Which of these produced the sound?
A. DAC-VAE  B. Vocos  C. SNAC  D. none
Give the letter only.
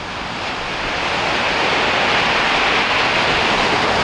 D